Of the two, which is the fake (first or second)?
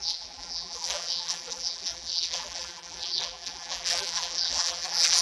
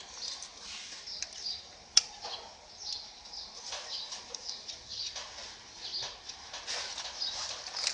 first